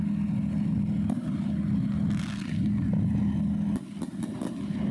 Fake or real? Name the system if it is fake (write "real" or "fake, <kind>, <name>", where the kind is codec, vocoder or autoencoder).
real